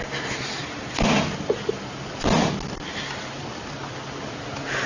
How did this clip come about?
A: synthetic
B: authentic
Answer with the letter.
B